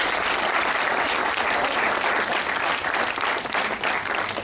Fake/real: real